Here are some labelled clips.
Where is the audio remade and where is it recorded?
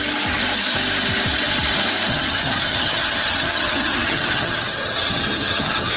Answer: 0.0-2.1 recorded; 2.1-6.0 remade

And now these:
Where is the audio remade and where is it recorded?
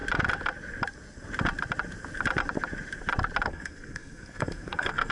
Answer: 0.0-3.5 recorded; 3.5-5.1 remade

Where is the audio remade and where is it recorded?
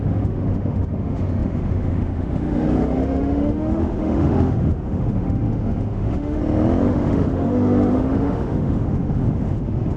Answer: 0.0-6.4 remade; 6.4-6.9 recorded; 6.9-10.0 remade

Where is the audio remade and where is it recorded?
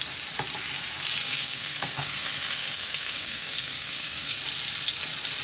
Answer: 0.0-1.2 recorded; 1.2-4.4 remade; 4.4-5.4 recorded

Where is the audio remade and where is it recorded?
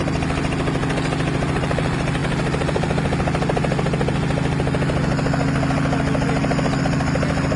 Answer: 0.0-7.6 recorded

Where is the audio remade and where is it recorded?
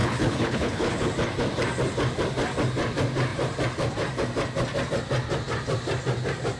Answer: 0.0-1.1 remade; 1.1-6.6 recorded